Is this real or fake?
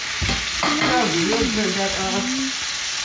real